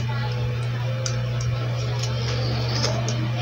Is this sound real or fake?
real